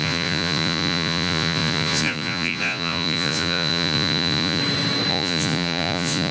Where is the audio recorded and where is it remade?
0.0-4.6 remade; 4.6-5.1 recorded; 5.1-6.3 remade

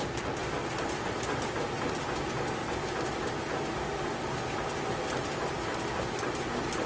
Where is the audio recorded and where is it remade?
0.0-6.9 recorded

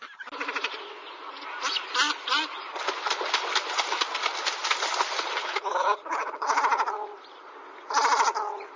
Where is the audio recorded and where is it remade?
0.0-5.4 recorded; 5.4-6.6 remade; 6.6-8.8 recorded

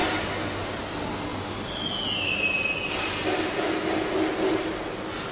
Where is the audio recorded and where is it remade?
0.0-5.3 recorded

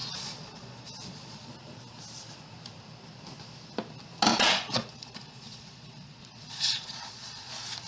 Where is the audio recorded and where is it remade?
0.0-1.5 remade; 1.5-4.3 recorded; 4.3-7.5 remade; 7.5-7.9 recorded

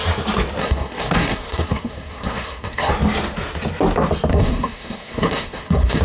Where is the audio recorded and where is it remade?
0.0-0.6 recorded; 0.6-2.9 remade; 2.9-4.3 recorded; 4.3-6.0 remade